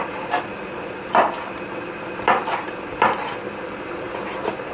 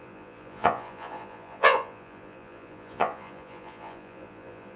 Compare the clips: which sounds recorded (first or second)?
first